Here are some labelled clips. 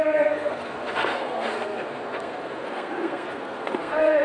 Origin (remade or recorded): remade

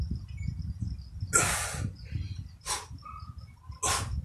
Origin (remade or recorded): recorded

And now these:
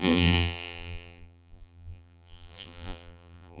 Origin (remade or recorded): remade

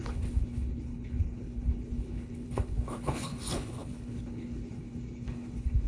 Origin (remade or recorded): remade